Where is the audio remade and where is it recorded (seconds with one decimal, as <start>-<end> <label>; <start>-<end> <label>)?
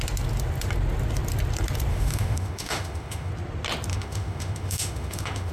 0.0-1.9 recorded; 1.9-3.3 remade; 3.3-3.9 recorded; 3.9-5.5 remade